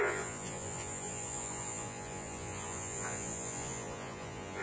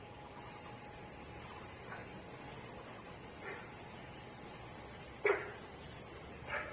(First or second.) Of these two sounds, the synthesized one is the first